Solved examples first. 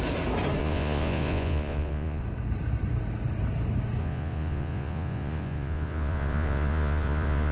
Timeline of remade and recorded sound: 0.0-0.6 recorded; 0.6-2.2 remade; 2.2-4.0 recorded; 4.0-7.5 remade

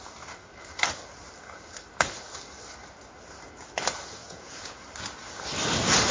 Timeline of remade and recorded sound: 0.0-4.2 recorded; 4.2-4.8 remade; 4.8-6.1 recorded